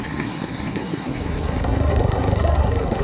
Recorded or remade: remade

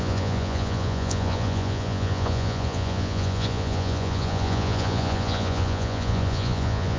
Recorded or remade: remade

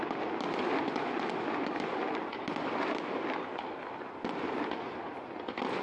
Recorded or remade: recorded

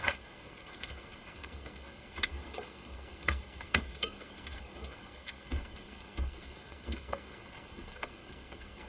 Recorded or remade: remade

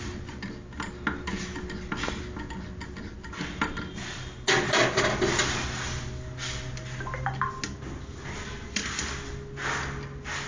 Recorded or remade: recorded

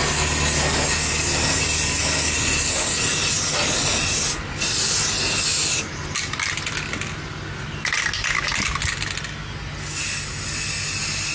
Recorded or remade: recorded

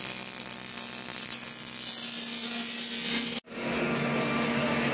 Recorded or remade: recorded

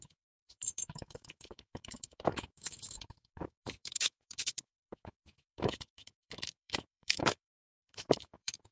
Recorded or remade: remade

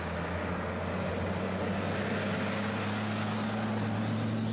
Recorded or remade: recorded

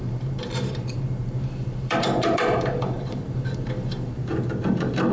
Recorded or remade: remade